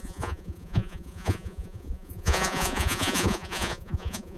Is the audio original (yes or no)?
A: no